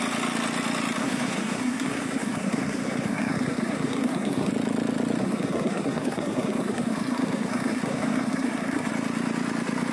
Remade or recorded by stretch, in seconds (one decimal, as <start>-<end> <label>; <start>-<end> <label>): 0.0-1.0 recorded; 1.0-4.5 remade; 4.5-5.2 recorded; 5.2-8.9 remade; 8.9-9.9 recorded